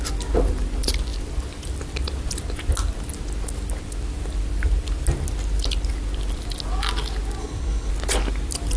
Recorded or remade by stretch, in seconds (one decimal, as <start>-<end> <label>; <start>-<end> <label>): 0.0-7.4 recorded; 7.4-7.9 remade; 7.9-8.8 recorded